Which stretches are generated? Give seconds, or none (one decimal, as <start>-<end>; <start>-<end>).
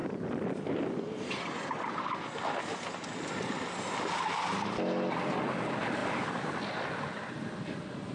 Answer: 6.0-6.5